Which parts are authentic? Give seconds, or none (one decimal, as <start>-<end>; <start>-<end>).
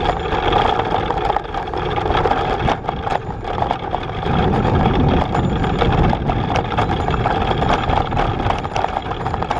0.0-3.1; 5.1-9.6